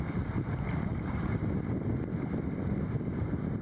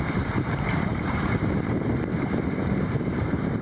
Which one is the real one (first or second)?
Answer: first